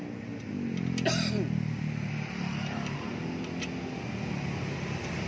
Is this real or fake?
real